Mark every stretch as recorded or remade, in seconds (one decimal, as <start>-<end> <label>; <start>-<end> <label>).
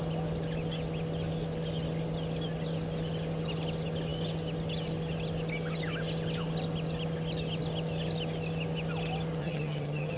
0.0-9.4 recorded; 9.4-10.2 remade